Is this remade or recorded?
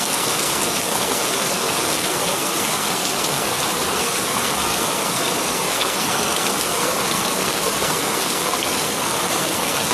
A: remade